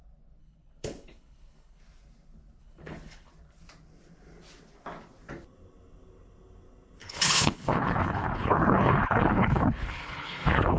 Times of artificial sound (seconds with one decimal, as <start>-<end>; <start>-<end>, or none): 0.4-1.8; 2.6-3.3; 7.0-10.8